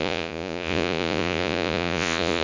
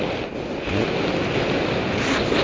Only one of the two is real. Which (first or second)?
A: second